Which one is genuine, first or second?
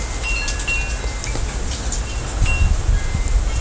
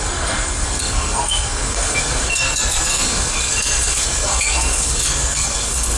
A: first